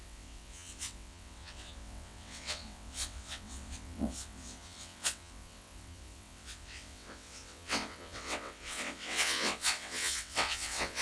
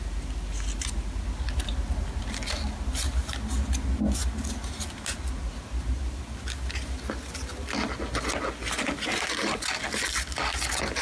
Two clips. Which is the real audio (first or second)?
second